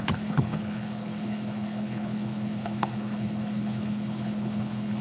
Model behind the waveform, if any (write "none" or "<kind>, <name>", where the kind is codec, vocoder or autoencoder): codec, HILCodec